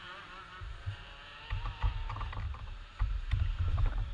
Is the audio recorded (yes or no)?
no